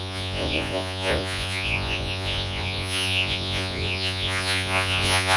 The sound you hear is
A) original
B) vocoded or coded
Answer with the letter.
B